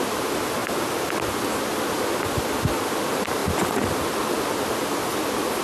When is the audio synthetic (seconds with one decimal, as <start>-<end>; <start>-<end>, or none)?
none